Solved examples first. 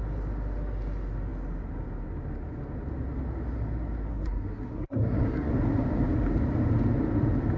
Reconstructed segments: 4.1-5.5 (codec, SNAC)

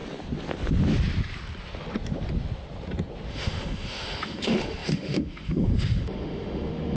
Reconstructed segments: 3.3-7.0 (autoencoder, DAC-VAE)

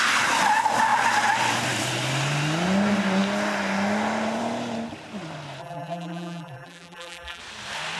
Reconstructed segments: 5.6-7.4 (vocoder, BigVGAN v2)

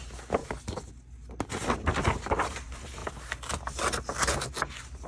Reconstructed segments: none

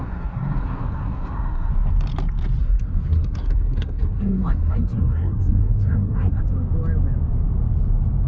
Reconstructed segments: 0.0-1.7 (codec, SNAC); 2.6-6.4